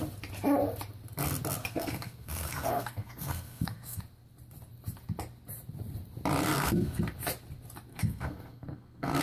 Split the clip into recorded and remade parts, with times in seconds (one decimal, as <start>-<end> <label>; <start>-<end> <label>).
0.0-1.6 recorded; 1.6-4.0 remade; 4.0-6.5 recorded; 6.5-7.0 remade; 7.0-7.9 recorded; 7.9-9.2 remade